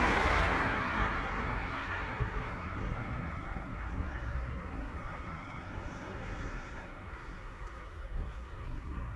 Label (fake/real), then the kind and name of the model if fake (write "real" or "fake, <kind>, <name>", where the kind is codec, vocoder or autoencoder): fake, codec, SNAC